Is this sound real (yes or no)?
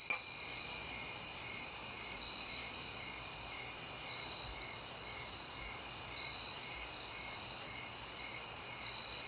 yes